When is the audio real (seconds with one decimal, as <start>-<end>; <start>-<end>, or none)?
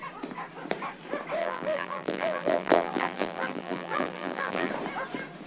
0.0-1.4; 4.7-5.5